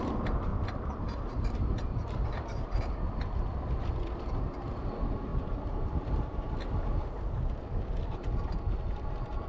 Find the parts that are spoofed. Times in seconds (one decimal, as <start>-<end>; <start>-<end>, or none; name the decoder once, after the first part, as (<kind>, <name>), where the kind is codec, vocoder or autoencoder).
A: 0.5-2.9 (vocoder, BigVGAN v2); 5.3-6.6